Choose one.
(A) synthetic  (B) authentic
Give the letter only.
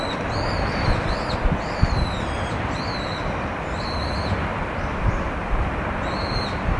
A